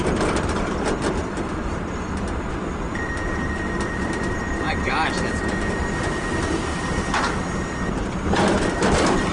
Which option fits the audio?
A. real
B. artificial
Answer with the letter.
B